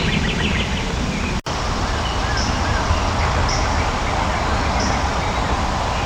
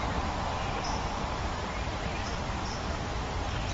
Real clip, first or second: first